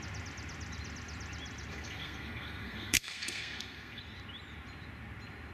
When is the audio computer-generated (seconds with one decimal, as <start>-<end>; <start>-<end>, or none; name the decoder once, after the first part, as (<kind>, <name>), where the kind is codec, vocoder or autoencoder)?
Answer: 1.7-4.0 (codec, SNAC)